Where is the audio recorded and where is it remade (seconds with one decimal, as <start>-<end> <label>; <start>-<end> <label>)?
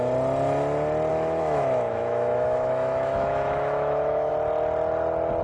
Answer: 0.0-1.1 recorded; 1.1-4.3 remade; 4.3-5.4 recorded